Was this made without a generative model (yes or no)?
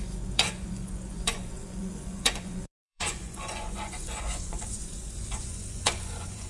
no